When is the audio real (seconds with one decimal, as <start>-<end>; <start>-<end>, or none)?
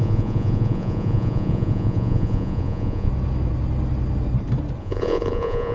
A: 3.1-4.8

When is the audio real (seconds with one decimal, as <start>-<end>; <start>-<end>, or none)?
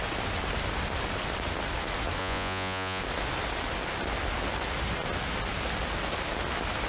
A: 0.0-2.2; 3.0-6.9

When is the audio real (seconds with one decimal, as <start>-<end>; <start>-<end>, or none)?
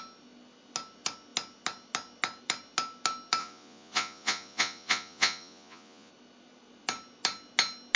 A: 0.0-3.4; 6.1-8.0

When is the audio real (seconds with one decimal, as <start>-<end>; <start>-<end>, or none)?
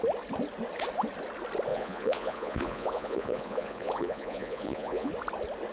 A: 0.0-1.7; 5.1-5.7